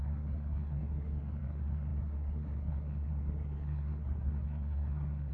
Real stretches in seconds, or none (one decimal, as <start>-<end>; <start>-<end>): none

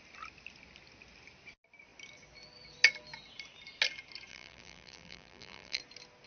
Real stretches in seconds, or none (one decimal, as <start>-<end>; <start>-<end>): 0.0-4.3; 5.8-6.3